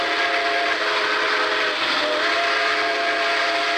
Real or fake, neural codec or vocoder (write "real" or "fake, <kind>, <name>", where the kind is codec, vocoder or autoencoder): real